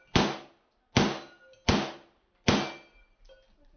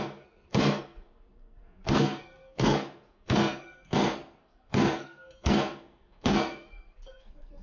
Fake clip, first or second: second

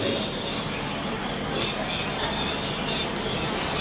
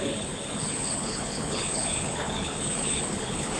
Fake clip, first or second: second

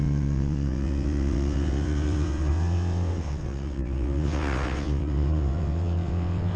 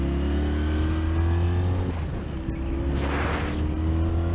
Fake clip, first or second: first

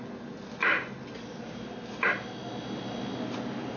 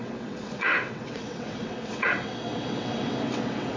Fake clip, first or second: second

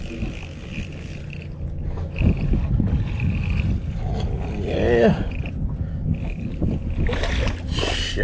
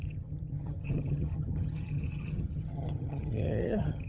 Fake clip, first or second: second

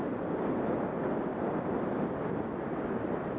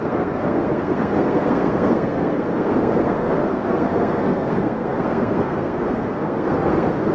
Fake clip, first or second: second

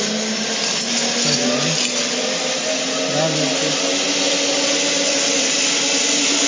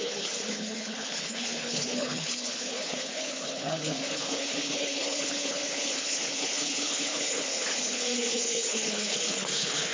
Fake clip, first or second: second